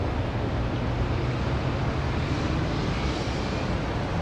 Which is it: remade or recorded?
recorded